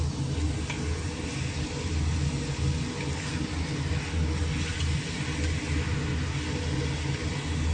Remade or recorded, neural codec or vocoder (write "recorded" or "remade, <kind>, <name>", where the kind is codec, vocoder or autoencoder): recorded